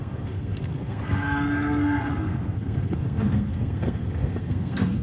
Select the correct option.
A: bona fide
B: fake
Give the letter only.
B